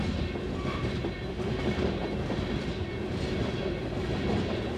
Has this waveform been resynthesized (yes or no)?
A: no